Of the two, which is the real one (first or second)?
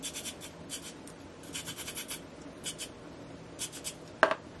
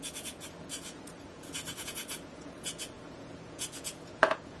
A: first